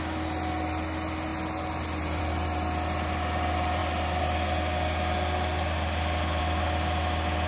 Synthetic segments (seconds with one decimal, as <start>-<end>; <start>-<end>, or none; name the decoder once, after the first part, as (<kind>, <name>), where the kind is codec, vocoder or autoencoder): none